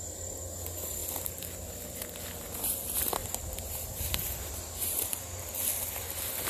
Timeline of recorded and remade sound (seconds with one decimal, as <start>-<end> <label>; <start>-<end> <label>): 0.0-3.2 recorded; 3.2-5.5 remade; 5.5-6.5 recorded